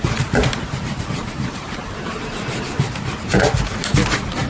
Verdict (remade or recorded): remade